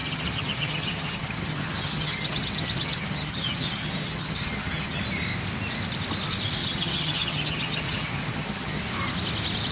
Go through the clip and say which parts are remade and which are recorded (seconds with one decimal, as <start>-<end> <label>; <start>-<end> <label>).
0.0-5.0 remade; 5.0-6.6 recorded; 6.6-8.8 remade; 8.8-9.7 recorded